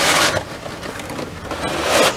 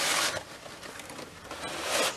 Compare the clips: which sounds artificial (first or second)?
second